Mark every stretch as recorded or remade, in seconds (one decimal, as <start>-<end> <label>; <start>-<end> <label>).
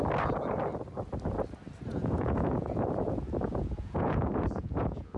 0.0-1.9 recorded; 1.9-5.2 remade